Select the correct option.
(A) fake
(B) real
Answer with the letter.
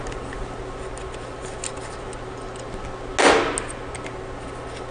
B